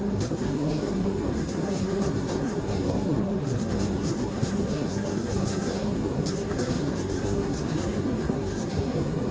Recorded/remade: remade